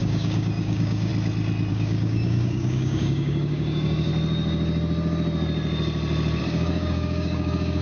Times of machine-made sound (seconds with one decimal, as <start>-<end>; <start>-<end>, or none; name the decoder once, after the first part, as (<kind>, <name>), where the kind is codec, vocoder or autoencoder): 0.0-1.1 (codec, DAC); 1.7-4.1; 6.4-7.8